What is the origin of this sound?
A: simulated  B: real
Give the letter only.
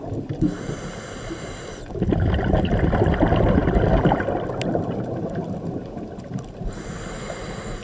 B